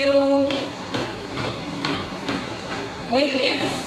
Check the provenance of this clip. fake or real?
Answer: fake